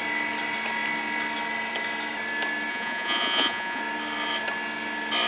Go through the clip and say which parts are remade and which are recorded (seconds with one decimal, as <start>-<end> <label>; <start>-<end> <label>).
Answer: 0.0-2.7 recorded; 2.7-3.8 remade; 3.8-5.3 recorded